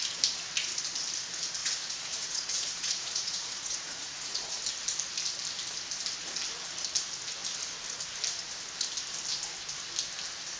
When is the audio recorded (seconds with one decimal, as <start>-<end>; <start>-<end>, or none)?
0.0-1.6; 4.6-10.6